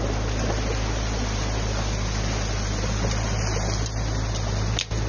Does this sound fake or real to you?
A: real